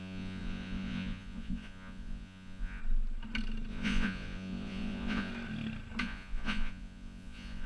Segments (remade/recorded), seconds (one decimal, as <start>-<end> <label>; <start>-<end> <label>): 0.0-2.8 remade; 2.8-3.7 recorded; 3.7-5.3 remade; 5.3-6.0 recorded; 6.0-7.7 remade